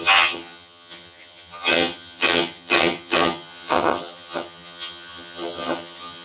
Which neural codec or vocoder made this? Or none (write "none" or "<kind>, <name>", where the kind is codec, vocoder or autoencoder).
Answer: vocoder, HiFi-GAN